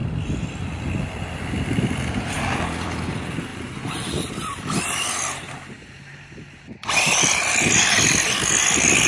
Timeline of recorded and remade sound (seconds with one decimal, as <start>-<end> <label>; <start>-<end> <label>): 0.0-3.5 remade; 3.5-5.9 recorded; 5.9-9.1 remade